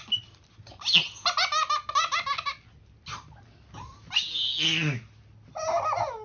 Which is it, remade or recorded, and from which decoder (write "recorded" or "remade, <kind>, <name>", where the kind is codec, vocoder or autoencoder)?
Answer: recorded